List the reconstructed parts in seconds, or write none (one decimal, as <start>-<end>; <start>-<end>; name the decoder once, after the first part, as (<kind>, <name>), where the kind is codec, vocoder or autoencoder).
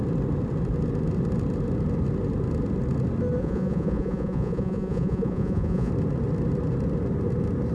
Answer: 3.4-5.9 (vocoder, Vocos)